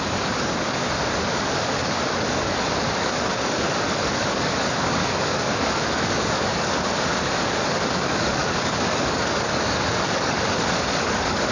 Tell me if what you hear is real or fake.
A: fake